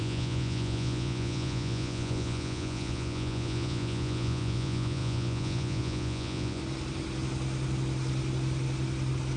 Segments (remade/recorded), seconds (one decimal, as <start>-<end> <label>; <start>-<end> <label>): 0.0-6.6 remade; 6.6-9.4 recorded